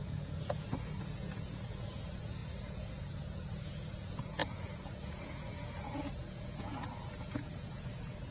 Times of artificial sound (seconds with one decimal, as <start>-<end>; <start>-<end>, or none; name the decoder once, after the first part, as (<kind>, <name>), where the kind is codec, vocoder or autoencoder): 0.0-8.3 (vocoder, Vocos)